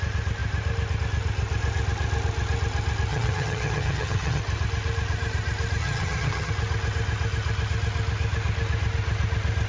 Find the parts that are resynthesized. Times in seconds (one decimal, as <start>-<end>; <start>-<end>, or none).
3.1-4.4; 5.8-6.5